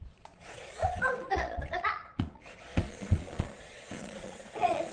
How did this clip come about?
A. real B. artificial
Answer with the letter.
B